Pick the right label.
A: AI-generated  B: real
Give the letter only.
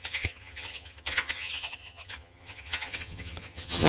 A